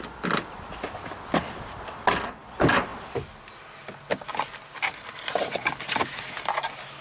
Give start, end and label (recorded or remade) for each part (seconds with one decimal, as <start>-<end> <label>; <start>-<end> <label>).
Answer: 0.0-7.0 recorded